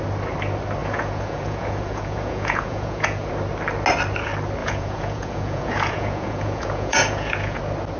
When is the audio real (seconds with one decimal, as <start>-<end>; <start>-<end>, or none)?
0.0-0.8; 3.3-4.6; 7.6-8.0